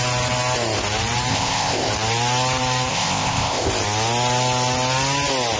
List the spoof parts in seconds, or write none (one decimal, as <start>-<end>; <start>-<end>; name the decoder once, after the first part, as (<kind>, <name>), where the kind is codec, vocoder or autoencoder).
1.3-1.9 (codec, ZipCodec); 2.9-3.7